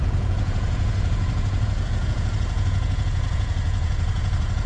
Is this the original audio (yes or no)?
no